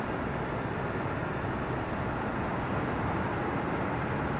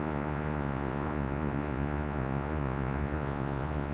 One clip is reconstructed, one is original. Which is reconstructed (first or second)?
second